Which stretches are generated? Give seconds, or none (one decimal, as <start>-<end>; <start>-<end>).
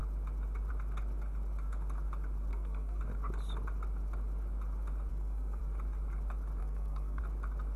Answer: 2.5-3.0; 5.1-5.6; 6.6-7.2